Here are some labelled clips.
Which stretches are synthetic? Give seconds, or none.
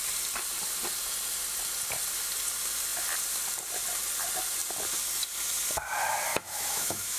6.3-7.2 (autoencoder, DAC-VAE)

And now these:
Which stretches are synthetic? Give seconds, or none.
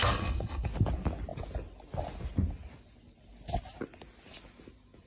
0.0-0.7 (codec, SNAC)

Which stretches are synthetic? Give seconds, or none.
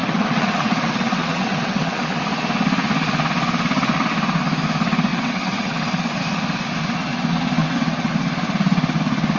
0.0-2.2 (vocoder, WaveNeXt); 5.1-6.2; 7.6-8.1